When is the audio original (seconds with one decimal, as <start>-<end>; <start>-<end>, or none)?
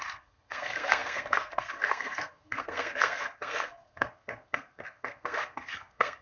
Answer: none